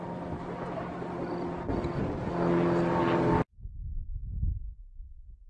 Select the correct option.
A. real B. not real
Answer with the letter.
A